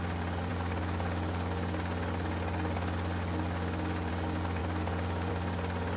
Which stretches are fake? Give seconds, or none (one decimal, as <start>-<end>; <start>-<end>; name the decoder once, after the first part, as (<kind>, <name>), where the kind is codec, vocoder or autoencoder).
none